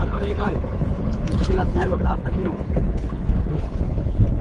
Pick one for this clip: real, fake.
fake